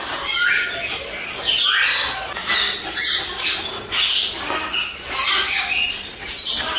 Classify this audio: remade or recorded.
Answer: recorded